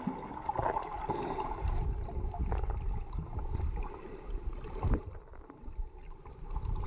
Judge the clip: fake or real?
real